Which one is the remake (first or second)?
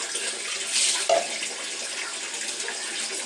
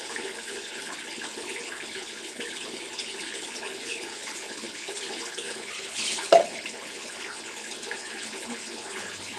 second